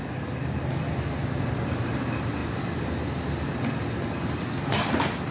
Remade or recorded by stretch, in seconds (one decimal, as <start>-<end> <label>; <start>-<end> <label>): 0.0-5.3 recorded